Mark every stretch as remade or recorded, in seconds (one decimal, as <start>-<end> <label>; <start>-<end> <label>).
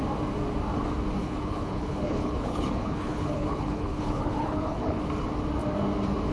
0.0-1.2 recorded; 1.2-5.0 remade; 5.0-6.3 recorded